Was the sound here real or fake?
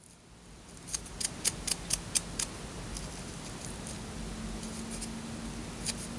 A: real